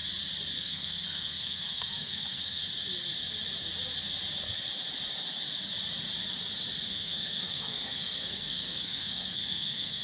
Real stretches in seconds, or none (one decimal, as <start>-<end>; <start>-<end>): 0.0-0.6; 2.6-6.9